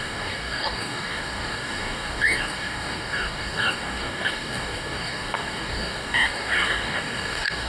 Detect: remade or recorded remade